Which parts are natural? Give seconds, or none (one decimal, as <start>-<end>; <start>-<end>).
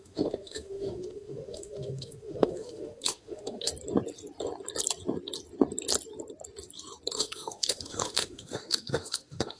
3.7-7.1